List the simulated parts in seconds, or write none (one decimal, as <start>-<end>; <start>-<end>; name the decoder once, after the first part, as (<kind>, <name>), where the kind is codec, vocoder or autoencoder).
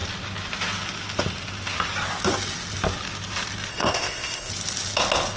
3.7-4.5 (codec, ZipCodec)